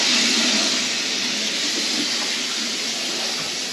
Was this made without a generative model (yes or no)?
yes